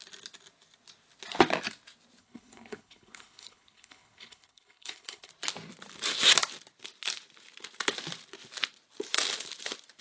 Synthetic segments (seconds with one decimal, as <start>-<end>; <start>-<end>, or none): 2.2-5.3